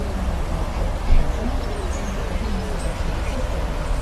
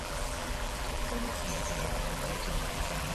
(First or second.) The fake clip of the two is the second